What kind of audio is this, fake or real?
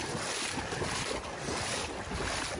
real